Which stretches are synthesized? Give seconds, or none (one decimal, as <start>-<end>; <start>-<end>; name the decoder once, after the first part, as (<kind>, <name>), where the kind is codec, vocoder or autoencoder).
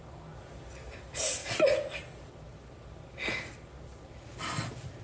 none